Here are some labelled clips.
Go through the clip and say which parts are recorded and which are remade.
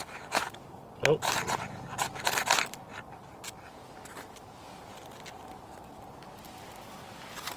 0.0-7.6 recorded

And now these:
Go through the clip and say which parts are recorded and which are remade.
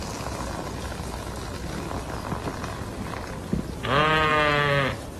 0.0-5.2 recorded